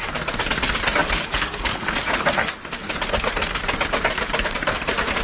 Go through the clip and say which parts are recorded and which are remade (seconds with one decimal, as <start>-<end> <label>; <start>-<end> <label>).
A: 0.0-1.0 recorded; 1.0-2.3 remade; 2.3-5.2 recorded